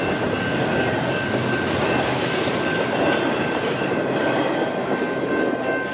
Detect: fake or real real